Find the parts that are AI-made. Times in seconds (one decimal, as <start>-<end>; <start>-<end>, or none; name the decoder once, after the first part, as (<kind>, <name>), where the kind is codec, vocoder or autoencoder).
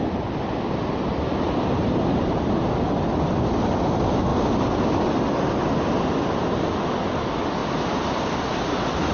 4.3-5.2 (vocoder, BigVGAN v2); 7.6-8.2